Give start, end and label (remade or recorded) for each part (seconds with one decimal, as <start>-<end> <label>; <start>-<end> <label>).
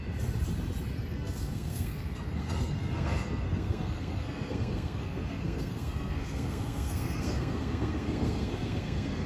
0.0-1.1 recorded; 1.1-9.3 remade